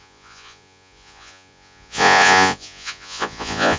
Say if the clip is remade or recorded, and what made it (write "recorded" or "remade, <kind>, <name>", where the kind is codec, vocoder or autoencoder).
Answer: remade, vocoder, Vocos